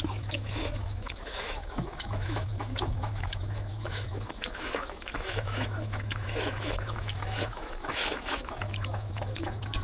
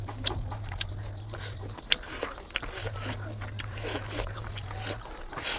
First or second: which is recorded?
second